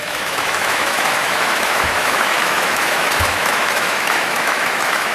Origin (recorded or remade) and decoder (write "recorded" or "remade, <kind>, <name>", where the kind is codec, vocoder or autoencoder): remade, autoencoder, DAC-VAE